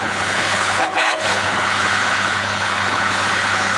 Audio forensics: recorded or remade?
remade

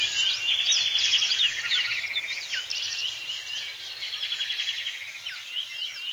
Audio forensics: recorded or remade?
recorded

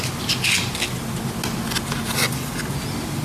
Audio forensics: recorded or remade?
recorded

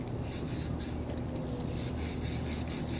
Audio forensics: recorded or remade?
recorded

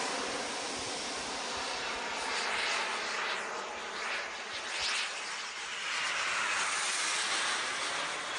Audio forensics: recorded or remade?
recorded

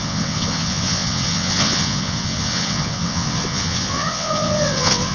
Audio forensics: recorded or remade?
remade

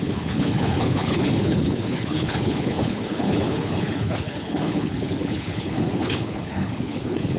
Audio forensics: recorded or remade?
remade